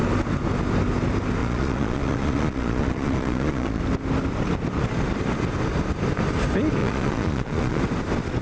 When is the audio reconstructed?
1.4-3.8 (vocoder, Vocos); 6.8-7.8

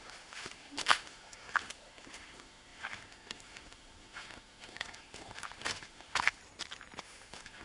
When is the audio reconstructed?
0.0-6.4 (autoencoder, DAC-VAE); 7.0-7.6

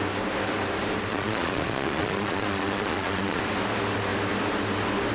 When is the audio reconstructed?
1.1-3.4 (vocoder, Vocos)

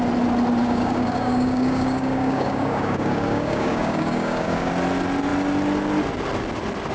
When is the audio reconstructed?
0.6-4.7 (codec, DAC)

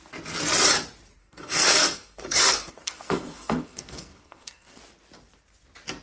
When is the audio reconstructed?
1.2-4.8 (codec, SNAC)

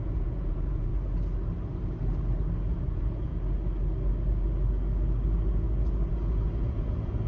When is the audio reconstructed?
0.0-0.9 (vocoder, Vocos); 2.8-3.3; 6.1-7.3